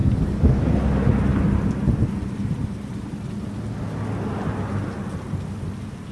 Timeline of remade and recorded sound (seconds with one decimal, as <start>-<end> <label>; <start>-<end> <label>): 0.0-0.6 remade; 0.6-6.1 recorded